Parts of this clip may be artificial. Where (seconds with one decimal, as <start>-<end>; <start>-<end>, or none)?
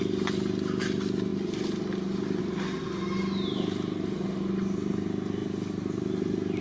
none